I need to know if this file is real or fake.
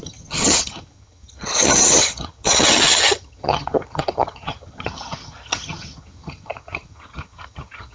fake